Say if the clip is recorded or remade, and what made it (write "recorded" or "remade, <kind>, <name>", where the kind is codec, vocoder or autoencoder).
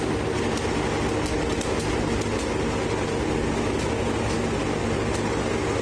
recorded